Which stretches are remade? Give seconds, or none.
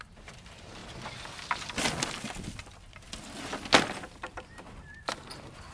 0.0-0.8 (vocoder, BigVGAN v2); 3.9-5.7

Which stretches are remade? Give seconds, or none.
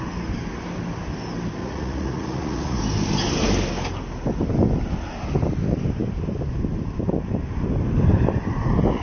1.6-2.8 (vocoder, Vocos)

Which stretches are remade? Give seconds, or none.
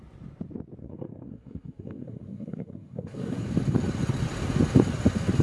0.8-3.4 (codec, SNAC)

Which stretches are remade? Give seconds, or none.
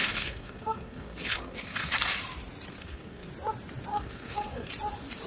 0.0-1.9 (codec, SNAC); 2.7-3.3; 3.9-4.7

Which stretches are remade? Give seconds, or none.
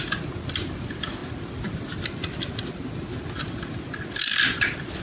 none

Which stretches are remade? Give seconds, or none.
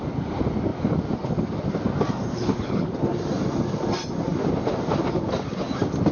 2.3-2.9 (codec, HILCodec)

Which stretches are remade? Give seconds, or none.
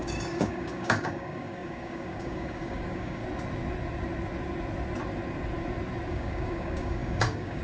0.0-3.2 (codec, DAC); 6.1-7.6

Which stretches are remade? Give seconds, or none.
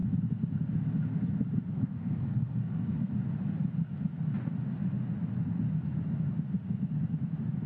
1.7-3.1 (codec, SNAC)